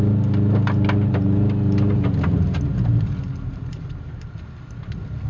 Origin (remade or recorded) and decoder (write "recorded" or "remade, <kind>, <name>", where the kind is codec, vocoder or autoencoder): recorded